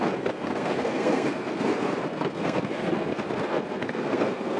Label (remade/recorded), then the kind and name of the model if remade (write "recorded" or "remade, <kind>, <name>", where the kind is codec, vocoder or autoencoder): remade, codec, SNAC